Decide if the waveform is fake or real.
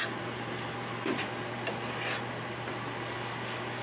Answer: real